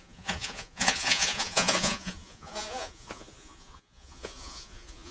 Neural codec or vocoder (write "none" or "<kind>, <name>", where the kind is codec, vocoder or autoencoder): vocoder, Vocos